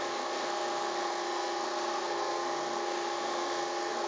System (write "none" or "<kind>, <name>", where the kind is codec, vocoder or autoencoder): codec, SNAC